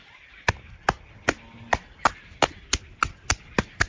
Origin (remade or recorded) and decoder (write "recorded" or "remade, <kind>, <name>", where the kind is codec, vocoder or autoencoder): recorded